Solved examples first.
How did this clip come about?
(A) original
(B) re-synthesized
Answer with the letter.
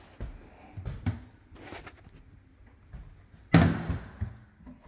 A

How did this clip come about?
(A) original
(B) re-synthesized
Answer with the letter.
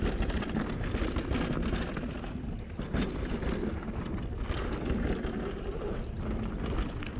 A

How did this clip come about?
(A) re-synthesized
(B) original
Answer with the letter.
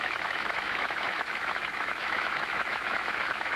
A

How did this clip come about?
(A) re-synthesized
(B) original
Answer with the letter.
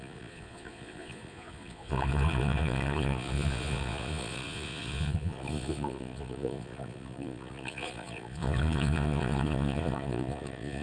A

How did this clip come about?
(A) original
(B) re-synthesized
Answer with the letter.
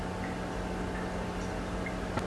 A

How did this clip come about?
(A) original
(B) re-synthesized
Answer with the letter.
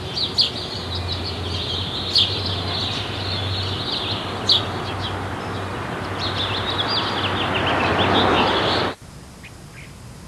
A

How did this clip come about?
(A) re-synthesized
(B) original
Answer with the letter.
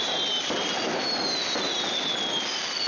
B